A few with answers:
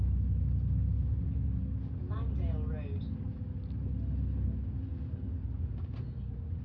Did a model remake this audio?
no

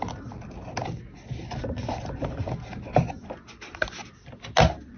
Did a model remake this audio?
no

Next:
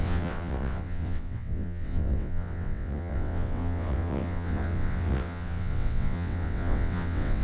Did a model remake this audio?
yes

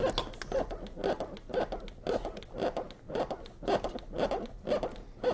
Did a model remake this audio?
no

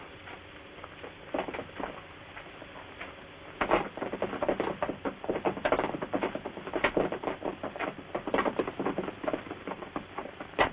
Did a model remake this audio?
no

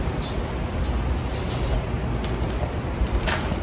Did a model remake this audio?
no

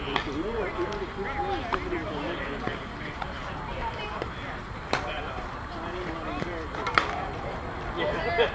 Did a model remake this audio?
no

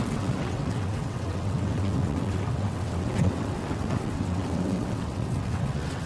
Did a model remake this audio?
yes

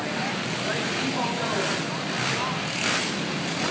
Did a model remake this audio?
no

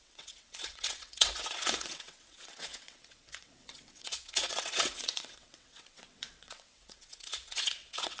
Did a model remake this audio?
yes